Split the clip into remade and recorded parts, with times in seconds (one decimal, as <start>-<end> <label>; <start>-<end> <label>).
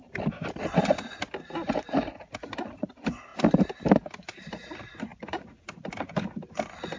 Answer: 0.0-2.3 recorded; 2.3-2.9 remade; 2.9-5.1 recorded; 5.1-6.1 remade; 6.1-7.0 recorded